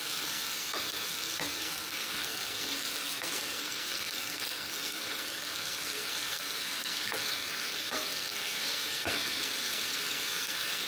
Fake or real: fake